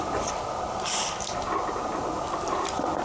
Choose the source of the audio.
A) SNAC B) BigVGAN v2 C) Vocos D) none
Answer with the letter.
D